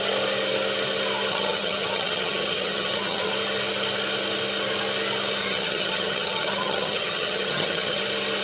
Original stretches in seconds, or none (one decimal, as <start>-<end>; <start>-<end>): 0.0-1.3; 3.3-5.4; 8.0-8.4